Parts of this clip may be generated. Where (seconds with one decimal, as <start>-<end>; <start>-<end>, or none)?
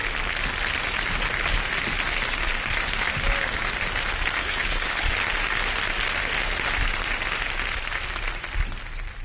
4.4-5.1